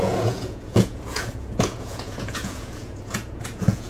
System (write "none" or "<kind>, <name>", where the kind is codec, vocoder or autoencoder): vocoder, Vocos